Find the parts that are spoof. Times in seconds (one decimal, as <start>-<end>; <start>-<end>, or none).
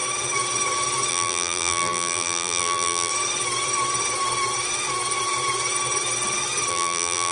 1.1-3.1; 6.7-7.3